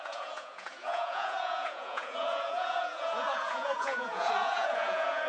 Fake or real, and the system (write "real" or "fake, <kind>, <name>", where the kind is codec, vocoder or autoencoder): fake, vocoder, Vocos